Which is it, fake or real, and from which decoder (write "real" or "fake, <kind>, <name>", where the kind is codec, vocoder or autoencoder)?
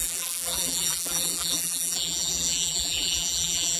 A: fake, vocoder, BigVGAN v2